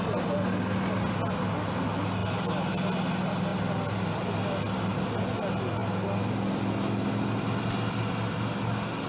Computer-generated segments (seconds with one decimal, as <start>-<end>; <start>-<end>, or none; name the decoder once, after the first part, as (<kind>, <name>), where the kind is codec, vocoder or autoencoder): none